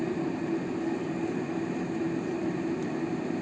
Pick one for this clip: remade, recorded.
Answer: recorded